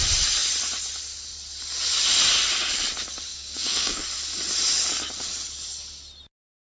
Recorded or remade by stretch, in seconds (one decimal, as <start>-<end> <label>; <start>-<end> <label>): 0.0-3.3 recorded; 3.3-4.0 remade; 4.0-6.6 recorded